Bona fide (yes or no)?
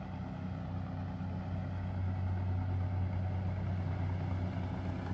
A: yes